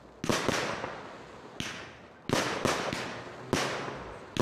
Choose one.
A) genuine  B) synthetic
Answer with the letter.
A